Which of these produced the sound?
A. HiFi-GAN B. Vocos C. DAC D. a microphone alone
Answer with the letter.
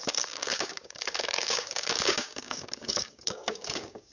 C